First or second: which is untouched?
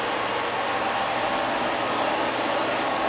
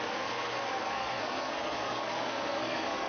first